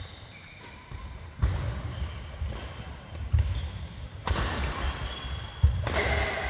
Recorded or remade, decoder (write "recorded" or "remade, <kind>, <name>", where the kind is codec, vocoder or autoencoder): recorded